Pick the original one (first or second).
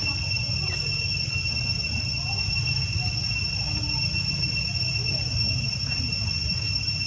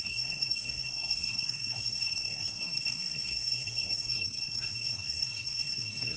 first